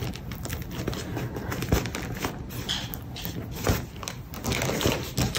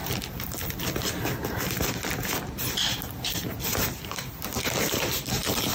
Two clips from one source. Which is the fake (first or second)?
second